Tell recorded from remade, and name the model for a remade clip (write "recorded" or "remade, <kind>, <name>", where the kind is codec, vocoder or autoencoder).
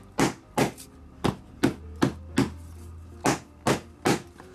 recorded